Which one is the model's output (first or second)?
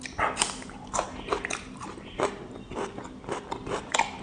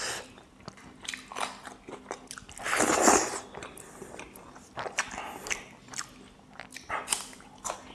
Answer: first